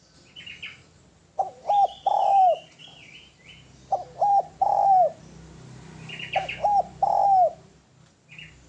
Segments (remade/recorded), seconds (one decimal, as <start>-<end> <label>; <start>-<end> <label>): 0.0-2.2 recorded; 2.2-2.8 remade; 2.8-4.3 recorded; 4.3-5.2 remade; 5.2-8.7 recorded